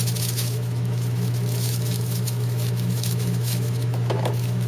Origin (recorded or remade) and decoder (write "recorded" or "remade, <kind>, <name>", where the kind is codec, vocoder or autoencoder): remade, autoencoder, DAC-VAE